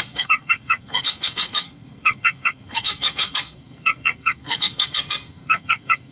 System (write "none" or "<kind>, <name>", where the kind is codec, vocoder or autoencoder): codec, SNAC